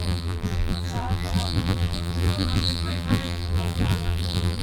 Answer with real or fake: fake